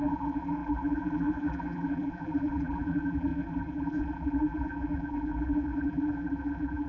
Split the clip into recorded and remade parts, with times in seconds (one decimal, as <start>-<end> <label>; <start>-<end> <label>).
0.0-6.9 remade